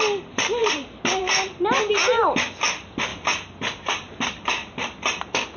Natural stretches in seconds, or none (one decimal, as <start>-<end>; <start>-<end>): 0.0-5.6